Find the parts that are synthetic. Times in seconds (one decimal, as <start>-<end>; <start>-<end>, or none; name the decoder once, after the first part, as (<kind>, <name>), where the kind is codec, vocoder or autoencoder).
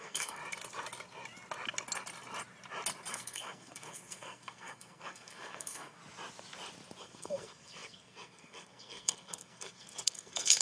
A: 0.0-0.4 (codec, SNAC); 3.1-6.0; 7.0-10.6